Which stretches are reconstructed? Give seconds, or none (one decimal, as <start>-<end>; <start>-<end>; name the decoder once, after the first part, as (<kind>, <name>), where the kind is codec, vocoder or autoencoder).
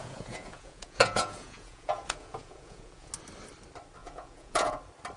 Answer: 0.0-3.1 (vocoder, Vocos); 4.0-4.8